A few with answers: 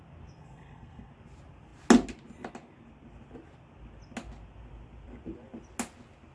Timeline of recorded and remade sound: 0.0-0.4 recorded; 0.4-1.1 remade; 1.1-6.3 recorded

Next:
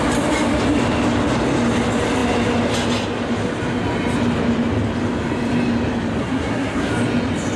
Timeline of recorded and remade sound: 0.0-6.2 recorded; 6.2-6.9 remade; 6.9-7.6 recorded

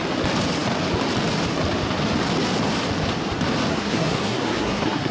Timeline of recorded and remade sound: 0.0-3.7 recorded; 3.7-5.1 remade

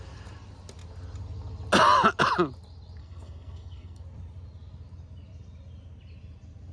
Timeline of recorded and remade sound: 0.0-3.0 recorded; 3.0-4.0 remade; 4.0-6.7 recorded

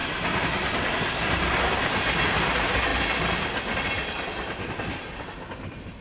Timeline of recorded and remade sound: 0.0-6.0 recorded

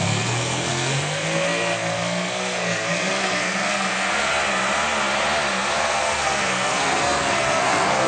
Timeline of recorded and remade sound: 0.0-4.3 remade; 4.3-5.8 recorded; 5.8-8.1 remade

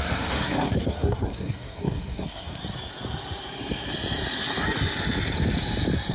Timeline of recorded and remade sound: 0.0-2.6 remade; 2.6-6.1 recorded